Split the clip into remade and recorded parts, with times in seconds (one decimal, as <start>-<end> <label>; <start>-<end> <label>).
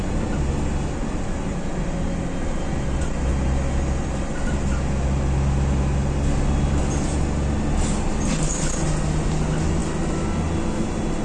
0.0-11.2 recorded